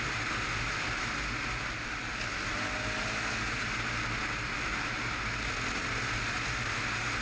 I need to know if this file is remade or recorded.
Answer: recorded